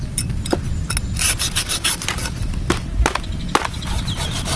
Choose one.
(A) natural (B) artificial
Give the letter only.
A